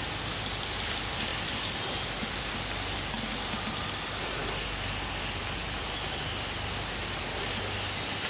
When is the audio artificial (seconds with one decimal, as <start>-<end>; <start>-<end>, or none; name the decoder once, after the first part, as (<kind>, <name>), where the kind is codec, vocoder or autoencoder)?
none

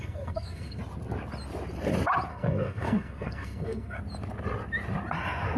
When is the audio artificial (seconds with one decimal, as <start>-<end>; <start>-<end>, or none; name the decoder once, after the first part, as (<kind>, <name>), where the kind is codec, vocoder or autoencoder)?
0.0-0.8 (codec, SNAC); 2.3-4.0

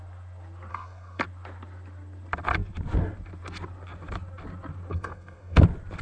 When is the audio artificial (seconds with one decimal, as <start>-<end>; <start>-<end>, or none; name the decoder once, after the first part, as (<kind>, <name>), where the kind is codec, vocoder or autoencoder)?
0.7-1.2 (codec, SNAC); 4.9-5.6

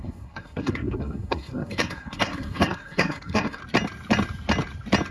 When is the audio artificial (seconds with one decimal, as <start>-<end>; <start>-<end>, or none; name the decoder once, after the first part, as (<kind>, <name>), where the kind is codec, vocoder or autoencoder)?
0.0-3.6 (codec, SNAC)